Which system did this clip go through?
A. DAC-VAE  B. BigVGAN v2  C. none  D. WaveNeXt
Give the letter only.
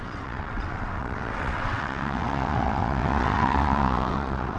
D